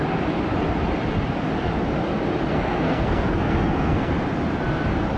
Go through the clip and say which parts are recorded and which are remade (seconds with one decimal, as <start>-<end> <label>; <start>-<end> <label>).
0.0-2.5 recorded; 2.5-4.1 remade; 4.1-5.2 recorded